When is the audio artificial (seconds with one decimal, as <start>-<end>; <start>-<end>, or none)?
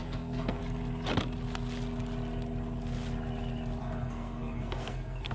0.0-0.6; 3.8-5.3